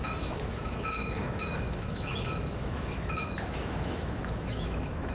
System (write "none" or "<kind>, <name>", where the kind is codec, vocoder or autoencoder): autoencoder, DAC-VAE